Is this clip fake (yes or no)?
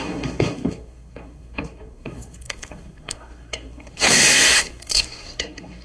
yes